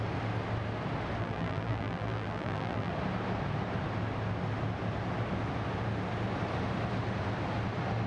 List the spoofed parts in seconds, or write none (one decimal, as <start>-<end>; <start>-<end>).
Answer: 1.2-2.9

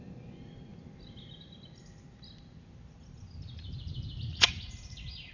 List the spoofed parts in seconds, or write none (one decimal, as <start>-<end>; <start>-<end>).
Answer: 4.3-5.3

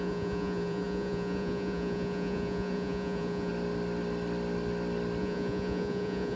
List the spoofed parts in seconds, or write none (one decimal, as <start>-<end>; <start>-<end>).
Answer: 0.0-3.5; 5.2-6.4

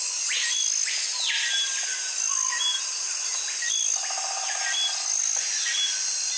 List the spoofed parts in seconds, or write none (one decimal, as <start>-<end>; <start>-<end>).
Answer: none

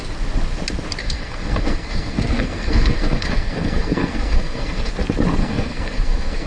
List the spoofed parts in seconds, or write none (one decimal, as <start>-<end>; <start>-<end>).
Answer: 1.0-4.9; 5.4-6.5

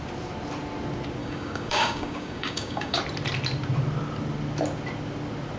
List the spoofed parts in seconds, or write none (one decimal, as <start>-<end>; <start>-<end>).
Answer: 1.2-3.0

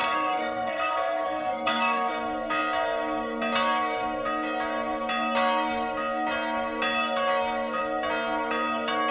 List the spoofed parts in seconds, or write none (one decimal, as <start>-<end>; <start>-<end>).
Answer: 0.0-2.1